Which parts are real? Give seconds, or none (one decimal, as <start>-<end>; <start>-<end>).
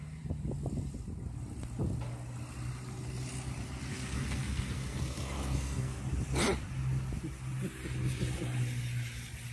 0.0-3.9; 6.0-9.5